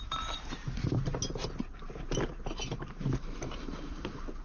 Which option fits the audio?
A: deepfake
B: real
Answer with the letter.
B